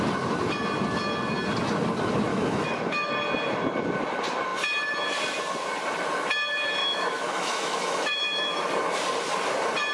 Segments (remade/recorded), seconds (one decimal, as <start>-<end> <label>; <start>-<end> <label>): 0.0-2.3 recorded; 2.3-3.1 remade; 3.1-6.8 recorded; 6.8-8.7 remade; 8.7-9.9 recorded